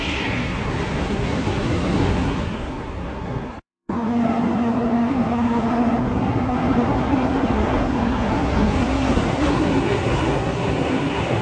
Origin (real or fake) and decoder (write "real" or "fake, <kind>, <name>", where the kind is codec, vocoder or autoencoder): fake, codec, SNAC